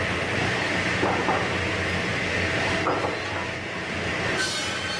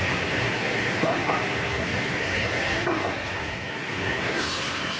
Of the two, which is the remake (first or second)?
second